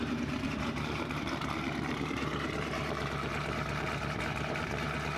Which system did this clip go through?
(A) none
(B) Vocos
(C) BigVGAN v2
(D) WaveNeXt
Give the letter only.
C